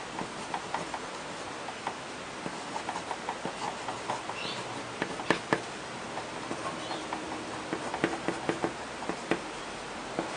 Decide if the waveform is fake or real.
real